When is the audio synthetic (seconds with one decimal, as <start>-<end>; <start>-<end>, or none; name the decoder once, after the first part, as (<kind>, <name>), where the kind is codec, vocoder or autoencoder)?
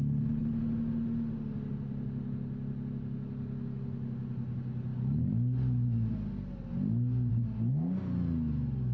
none